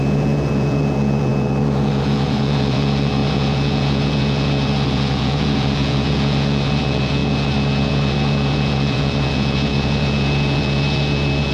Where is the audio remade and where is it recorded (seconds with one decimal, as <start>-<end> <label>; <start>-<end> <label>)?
0.0-11.5 remade